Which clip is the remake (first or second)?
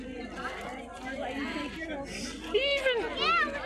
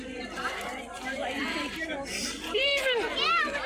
second